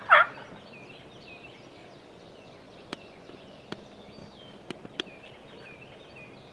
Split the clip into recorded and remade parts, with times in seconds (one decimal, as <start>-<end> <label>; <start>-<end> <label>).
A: 0.0-1.8 recorded; 1.8-3.6 remade; 3.6-6.5 recorded